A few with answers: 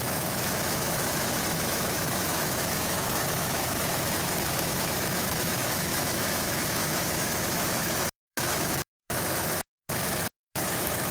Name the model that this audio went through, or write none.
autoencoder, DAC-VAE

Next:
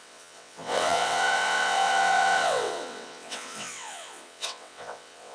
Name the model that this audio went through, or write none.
vocoder, WaveNeXt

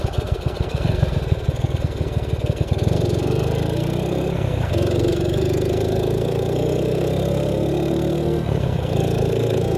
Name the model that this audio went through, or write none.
codec, SNAC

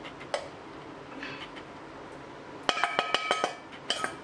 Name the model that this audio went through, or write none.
none